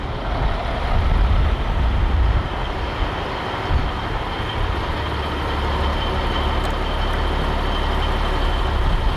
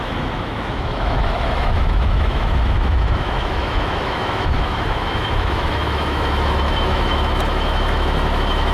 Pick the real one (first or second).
first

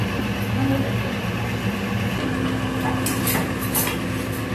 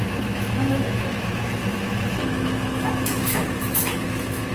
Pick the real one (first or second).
first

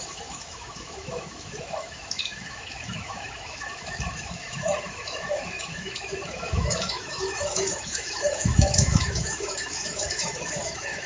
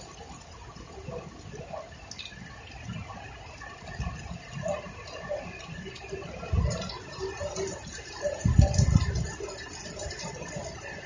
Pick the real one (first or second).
second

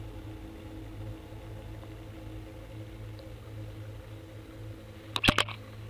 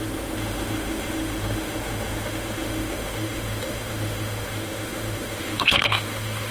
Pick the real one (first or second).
first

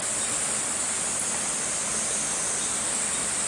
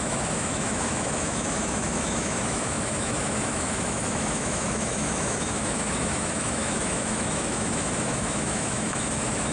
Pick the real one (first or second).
first